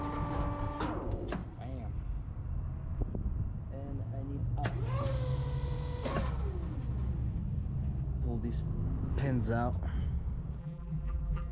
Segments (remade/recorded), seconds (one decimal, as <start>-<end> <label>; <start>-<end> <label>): 0.0-10.6 recorded; 10.6-11.5 remade